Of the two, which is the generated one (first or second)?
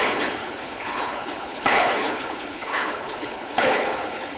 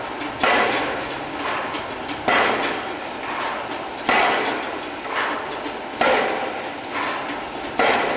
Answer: first